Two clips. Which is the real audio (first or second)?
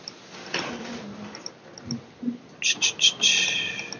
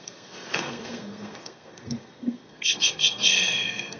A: first